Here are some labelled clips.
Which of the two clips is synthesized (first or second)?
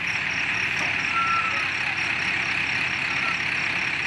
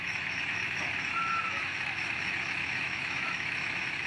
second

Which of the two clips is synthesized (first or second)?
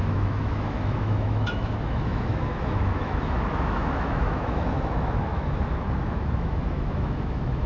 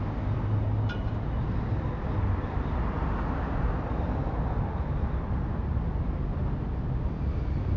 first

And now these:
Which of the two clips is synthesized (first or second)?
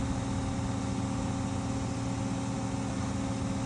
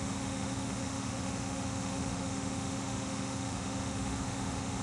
second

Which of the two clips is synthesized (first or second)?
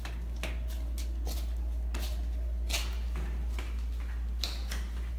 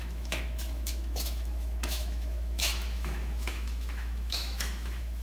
second